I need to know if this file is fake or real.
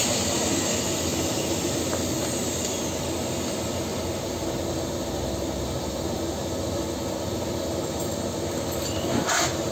real